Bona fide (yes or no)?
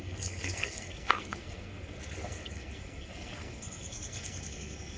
no